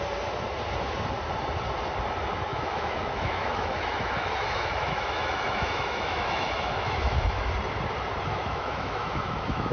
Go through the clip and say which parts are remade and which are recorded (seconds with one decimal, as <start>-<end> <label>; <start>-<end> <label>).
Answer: 0.0-2.5 recorded; 2.5-7.5 remade; 7.5-8.4 recorded; 8.4-9.7 remade